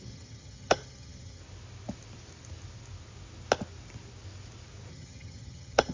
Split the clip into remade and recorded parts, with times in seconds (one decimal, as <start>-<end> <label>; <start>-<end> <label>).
0.0-1.4 remade; 1.4-4.9 recorded; 4.9-5.9 remade